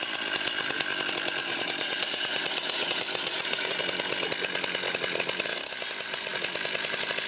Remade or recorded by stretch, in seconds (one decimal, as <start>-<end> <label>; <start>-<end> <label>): 0.0-1.4 recorded; 1.4-3.8 remade; 3.8-7.3 recorded